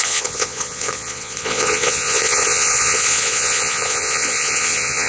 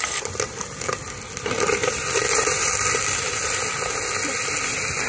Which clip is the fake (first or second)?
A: first